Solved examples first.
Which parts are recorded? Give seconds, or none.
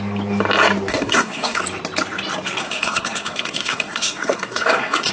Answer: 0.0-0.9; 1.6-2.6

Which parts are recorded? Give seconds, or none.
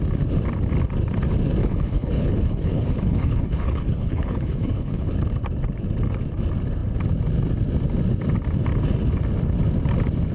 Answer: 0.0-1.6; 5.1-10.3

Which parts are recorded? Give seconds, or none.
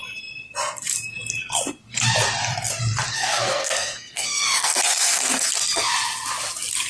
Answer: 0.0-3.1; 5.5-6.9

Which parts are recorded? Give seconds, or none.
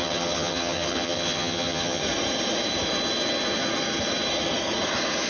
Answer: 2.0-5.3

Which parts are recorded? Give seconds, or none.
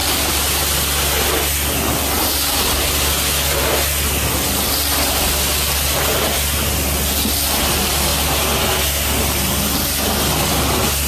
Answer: 0.0-11.1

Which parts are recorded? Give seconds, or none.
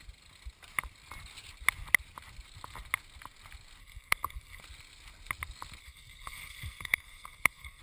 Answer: 0.0-3.8; 4.6-5.8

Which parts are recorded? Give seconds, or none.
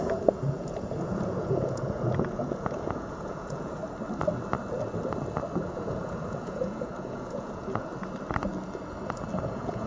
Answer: 3.8-5.6; 7.9-9.4